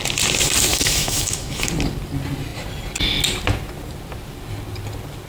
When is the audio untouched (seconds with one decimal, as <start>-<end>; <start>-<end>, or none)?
0.0-0.7; 1.7-5.3